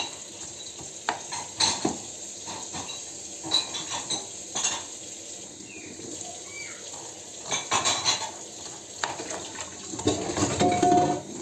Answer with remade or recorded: recorded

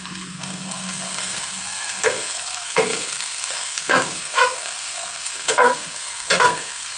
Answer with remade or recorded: remade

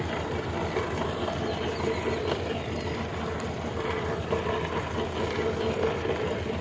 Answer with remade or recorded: recorded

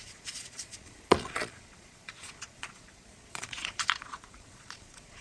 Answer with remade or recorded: remade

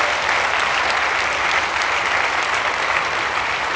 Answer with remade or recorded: recorded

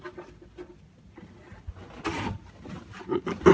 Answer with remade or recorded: recorded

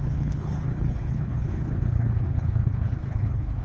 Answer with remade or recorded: remade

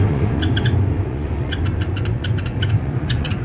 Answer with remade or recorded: remade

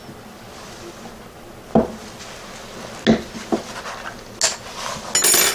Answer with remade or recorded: recorded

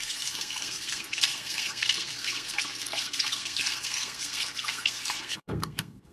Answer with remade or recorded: remade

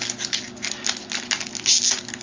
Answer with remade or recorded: recorded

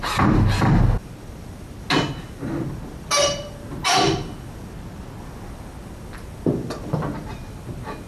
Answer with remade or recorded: recorded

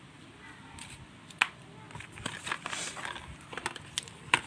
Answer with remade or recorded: recorded